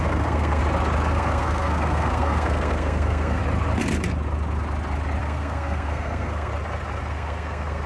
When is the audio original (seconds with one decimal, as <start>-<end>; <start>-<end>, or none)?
0.6-1.1; 3.4-5.2; 6.5-7.1